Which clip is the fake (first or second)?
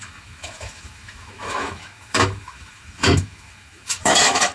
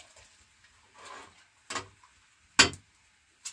first